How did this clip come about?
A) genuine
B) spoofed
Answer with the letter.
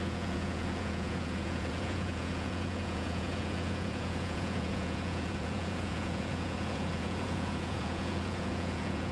B